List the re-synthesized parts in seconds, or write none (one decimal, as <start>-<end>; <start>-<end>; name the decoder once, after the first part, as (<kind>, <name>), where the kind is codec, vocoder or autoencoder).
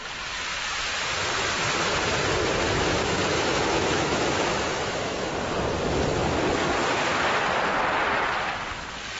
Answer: 2.9-5.3 (autoencoder, DAC-VAE)